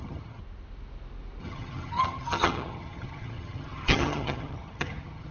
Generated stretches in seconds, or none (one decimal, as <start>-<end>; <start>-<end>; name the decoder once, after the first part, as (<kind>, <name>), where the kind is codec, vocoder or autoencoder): 0.0-0.4 (vocoder, HiFi-GAN); 1.4-5.3